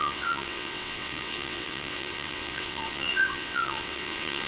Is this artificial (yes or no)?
yes